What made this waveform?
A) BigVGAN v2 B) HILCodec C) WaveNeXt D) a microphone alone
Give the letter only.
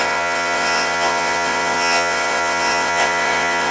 C